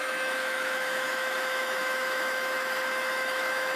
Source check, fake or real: fake